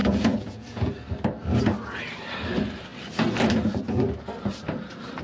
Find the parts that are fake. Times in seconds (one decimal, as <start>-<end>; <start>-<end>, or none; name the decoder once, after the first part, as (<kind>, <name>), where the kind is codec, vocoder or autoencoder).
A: 0.0-0.9 (vocoder, Vocos)